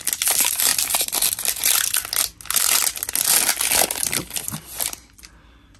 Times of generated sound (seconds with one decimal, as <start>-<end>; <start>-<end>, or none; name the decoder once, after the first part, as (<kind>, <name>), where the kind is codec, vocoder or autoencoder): none